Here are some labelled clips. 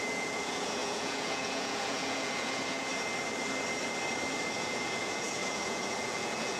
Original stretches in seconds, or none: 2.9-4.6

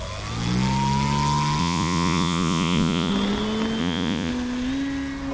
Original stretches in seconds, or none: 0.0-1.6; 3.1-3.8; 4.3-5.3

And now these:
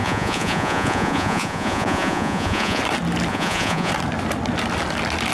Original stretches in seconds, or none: 2.8-3.3; 3.9-5.3